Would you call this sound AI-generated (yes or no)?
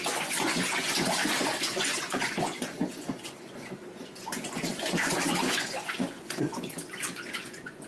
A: yes